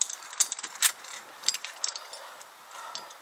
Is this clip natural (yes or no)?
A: no